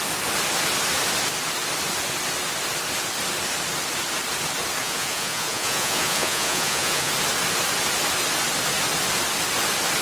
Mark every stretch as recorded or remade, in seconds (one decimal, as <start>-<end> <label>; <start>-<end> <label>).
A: 0.0-4.8 recorded; 4.8-7.1 remade; 7.1-10.0 recorded